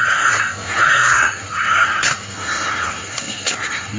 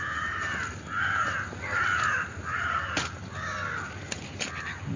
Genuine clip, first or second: second